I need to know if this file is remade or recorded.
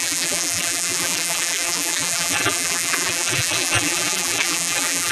remade